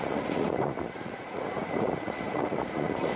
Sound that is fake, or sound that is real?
fake